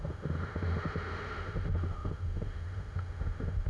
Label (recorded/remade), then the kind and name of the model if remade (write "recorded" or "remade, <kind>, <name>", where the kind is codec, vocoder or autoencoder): remade, autoencoder, DAC-VAE